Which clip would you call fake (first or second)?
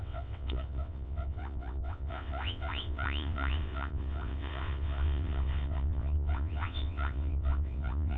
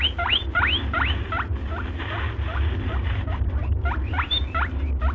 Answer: first